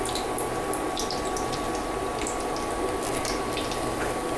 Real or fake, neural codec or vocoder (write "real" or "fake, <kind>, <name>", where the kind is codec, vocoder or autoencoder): real